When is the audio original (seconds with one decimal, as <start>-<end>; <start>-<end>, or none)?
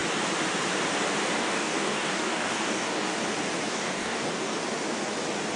0.0-1.4; 3.2-3.7; 4.6-5.6